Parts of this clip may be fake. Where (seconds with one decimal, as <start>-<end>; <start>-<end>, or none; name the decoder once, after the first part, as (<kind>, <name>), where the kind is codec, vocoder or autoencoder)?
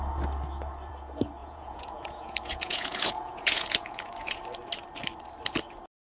1.4-4.4 (vocoder, Vocos)